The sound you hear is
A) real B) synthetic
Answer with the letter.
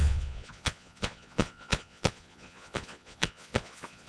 B